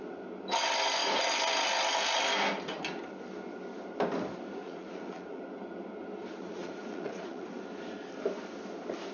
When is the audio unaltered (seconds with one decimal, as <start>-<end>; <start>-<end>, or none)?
0.0-4.6; 5.4-6.4; 7.6-9.1